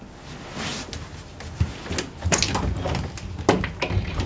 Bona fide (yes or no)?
yes